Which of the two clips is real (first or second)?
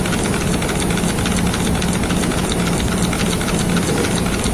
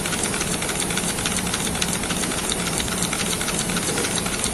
first